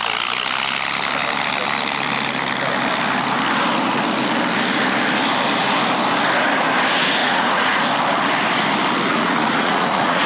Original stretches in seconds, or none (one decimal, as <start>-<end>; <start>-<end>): 0.0-7.2; 7.8-9.1